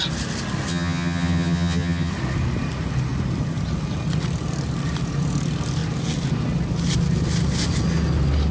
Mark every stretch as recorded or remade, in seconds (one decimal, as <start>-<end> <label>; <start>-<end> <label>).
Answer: 0.0-0.7 recorded; 0.7-2.1 remade; 2.1-8.5 recorded